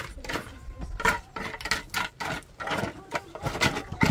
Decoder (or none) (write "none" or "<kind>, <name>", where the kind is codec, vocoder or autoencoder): none